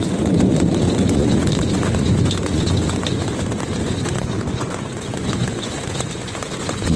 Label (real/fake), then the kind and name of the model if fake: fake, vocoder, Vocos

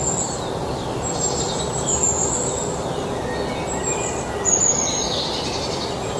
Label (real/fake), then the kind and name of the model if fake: real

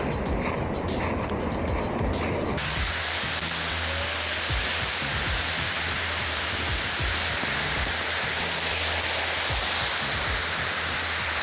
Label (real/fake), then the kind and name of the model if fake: real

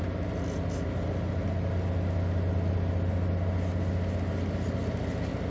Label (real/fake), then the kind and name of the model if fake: real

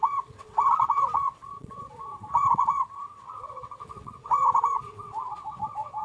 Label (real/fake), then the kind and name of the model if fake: fake, vocoder, WaveNeXt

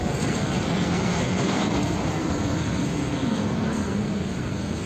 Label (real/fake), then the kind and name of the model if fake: fake, codec, SNAC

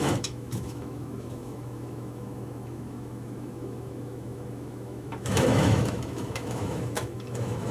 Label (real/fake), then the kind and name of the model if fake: fake, autoencoder, DAC-VAE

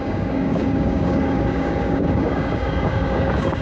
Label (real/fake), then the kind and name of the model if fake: fake, codec, DAC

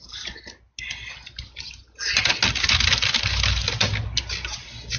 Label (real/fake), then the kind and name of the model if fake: real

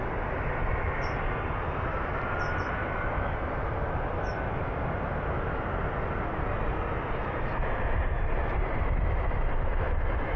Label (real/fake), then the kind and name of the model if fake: real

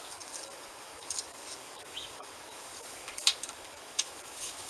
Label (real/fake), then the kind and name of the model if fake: fake, codec, DAC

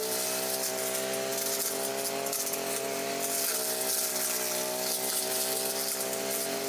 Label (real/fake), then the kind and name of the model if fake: real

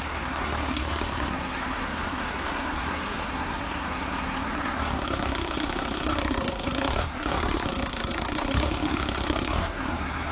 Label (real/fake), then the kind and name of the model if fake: fake, codec, SNAC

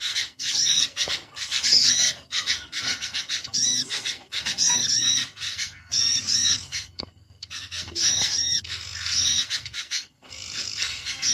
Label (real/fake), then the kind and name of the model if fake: fake, codec, SNAC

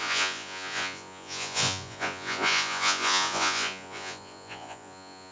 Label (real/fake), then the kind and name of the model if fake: fake, vocoder, Vocos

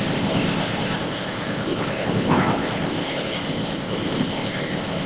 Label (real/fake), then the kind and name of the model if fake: fake, codec, ZipCodec